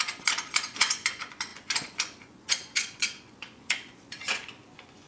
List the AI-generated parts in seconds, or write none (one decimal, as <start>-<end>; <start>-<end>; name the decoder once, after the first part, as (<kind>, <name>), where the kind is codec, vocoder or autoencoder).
0.0-5.1 (vocoder, Vocos)